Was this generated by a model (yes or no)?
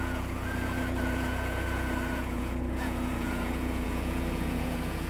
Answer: yes